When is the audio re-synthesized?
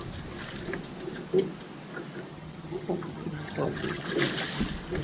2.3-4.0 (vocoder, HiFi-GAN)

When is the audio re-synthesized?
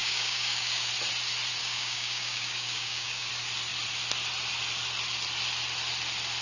0.0-0.9 (codec, DAC); 1.6-3.3